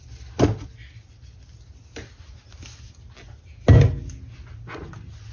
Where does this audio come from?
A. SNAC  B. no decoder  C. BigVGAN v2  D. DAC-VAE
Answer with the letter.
B